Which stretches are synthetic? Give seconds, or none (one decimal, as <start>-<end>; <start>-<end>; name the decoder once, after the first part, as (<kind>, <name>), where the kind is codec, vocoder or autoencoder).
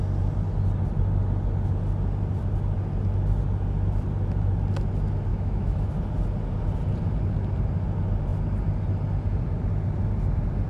5.3-5.9 (autoencoder, DAC-VAE)